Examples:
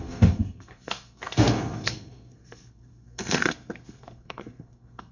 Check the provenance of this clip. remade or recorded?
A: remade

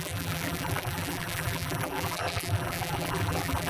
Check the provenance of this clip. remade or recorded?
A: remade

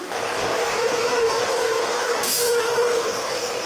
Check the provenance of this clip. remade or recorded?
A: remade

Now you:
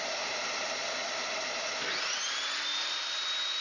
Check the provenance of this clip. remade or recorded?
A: remade